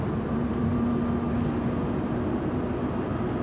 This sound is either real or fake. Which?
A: real